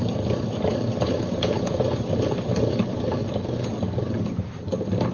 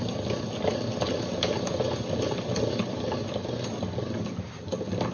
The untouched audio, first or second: second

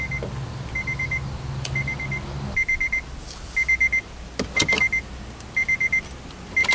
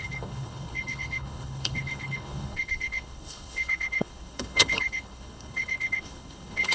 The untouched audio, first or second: first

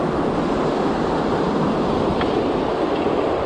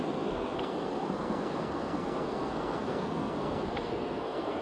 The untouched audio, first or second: first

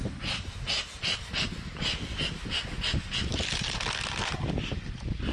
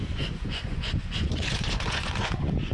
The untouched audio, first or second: first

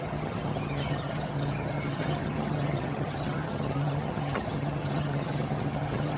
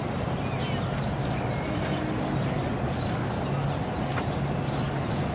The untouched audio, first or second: second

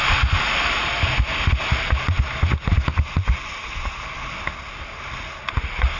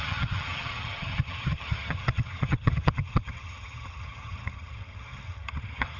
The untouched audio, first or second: first